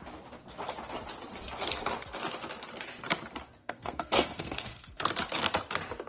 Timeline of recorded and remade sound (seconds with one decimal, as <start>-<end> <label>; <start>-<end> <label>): 0.0-3.6 recorded; 3.6-5.1 remade; 5.1-6.1 recorded